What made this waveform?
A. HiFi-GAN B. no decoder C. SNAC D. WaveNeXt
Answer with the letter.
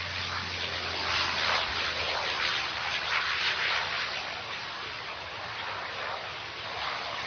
B